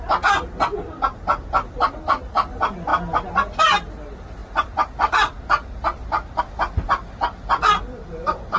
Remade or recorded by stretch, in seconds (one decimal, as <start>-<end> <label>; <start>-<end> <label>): 0.0-8.6 recorded

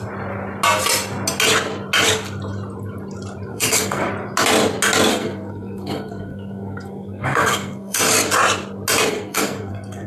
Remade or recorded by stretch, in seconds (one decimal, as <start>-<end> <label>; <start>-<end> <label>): 0.0-3.5 recorded; 3.5-4.1 remade; 4.1-5.1 recorded; 5.1-8.0 remade; 8.0-9.1 recorded; 9.1-10.1 remade

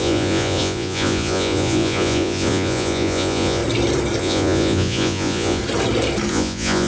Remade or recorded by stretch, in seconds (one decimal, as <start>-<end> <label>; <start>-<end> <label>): 0.0-3.6 remade; 3.6-4.2 recorded; 4.2-5.6 remade; 5.6-6.3 recorded; 6.3-6.9 remade

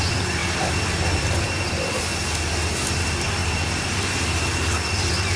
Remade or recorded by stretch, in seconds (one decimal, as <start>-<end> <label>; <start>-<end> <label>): 0.0-2.1 remade; 2.1-3.0 recorded; 3.0-3.4 remade; 3.4-5.4 recorded

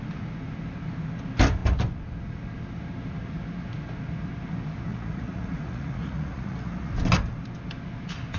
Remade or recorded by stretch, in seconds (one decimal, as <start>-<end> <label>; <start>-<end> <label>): 0.0-4.9 recorded; 4.9-6.9 remade; 6.9-8.4 recorded